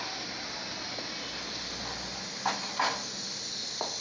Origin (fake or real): real